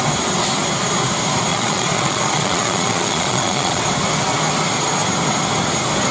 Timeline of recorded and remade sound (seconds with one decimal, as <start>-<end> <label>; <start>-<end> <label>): 0.0-1.5 recorded; 1.5-3.8 remade; 3.8-6.1 recorded